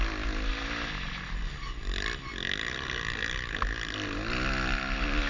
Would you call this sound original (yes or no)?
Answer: yes